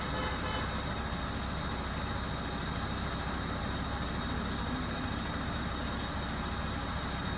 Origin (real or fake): real